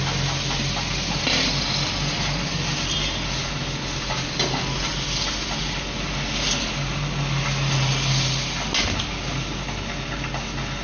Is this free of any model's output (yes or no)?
yes